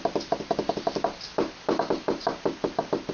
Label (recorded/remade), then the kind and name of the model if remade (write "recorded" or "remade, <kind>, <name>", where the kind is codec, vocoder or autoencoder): recorded